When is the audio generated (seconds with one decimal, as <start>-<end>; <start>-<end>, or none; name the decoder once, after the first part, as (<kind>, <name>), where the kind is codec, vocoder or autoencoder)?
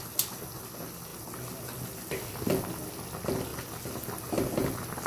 none